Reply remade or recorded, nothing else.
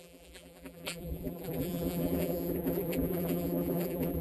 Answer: remade